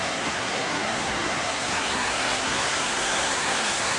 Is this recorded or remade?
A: remade